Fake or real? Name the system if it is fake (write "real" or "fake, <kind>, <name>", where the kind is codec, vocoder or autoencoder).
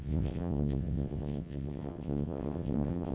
fake, vocoder, WaveNeXt